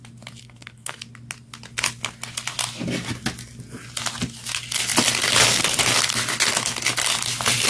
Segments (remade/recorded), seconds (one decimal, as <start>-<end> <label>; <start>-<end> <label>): 0.0-0.4 recorded; 0.4-1.0 remade; 1.0-7.7 recorded